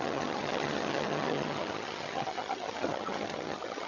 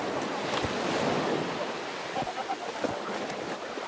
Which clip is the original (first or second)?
second